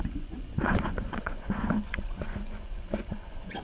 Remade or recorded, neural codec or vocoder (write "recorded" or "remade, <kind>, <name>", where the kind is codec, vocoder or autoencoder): remade, vocoder, Vocos